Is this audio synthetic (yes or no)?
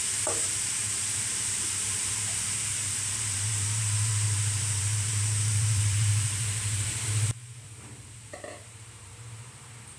yes